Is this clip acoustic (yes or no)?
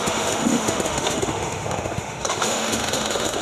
no